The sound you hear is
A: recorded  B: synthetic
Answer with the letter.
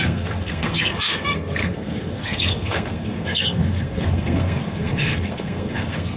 B